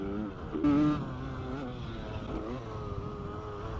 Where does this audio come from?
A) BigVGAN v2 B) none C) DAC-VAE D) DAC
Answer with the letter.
B